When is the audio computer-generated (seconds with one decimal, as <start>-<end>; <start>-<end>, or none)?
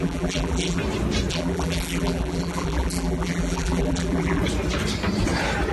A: 0.0-0.8; 1.3-4.4